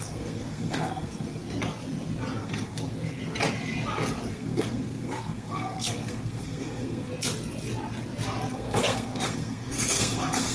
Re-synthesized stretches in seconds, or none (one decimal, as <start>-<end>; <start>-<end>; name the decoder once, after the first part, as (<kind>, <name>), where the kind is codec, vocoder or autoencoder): 0.0-1.4 (codec, SNAC); 2.4-3.2; 4.3-7.1; 8.5-10.5